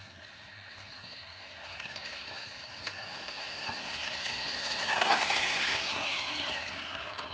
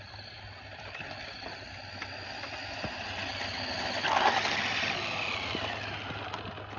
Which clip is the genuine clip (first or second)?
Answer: second